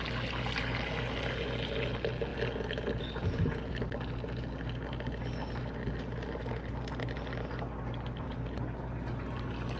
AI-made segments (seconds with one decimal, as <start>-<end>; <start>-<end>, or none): none